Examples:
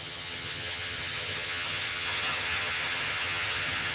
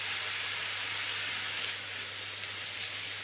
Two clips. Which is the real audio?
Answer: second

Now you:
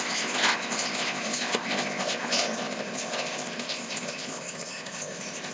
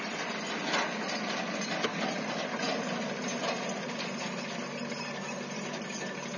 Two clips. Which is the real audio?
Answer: second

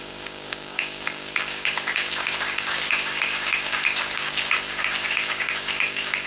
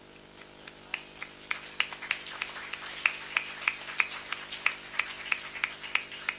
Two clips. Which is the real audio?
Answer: second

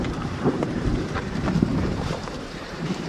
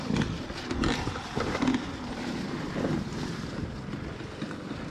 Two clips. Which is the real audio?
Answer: second